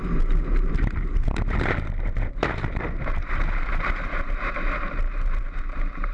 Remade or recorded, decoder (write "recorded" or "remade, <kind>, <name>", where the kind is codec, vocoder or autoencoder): remade, vocoder, BigVGAN v2